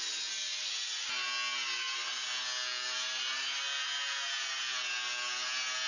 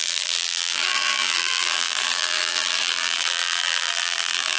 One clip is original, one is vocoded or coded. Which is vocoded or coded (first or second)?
second